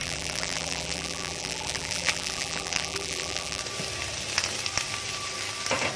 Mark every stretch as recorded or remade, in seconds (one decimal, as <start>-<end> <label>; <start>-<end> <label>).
0.0-3.6 remade; 3.6-6.0 recorded